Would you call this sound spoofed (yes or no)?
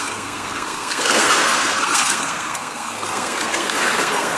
yes